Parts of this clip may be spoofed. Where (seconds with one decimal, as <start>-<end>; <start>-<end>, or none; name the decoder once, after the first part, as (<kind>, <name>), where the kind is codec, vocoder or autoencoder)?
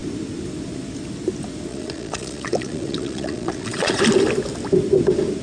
1.7-4.0 (vocoder, Vocos)